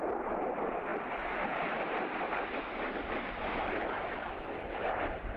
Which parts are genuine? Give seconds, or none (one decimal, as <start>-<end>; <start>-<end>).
none